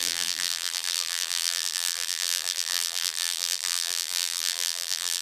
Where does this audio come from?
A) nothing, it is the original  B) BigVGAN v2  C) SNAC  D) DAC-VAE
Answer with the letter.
B